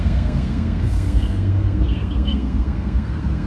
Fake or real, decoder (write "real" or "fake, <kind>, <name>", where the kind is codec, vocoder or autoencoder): fake, codec, SNAC